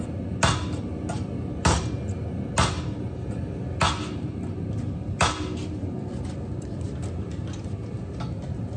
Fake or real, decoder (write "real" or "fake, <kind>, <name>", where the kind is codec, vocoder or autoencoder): real